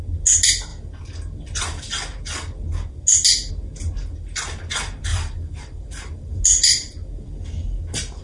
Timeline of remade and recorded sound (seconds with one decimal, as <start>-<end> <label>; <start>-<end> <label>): 0.0-5.1 recorded; 5.1-6.4 remade; 6.4-8.2 recorded